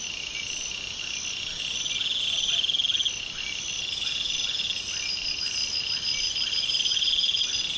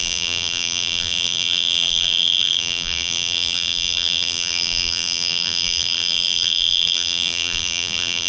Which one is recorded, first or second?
first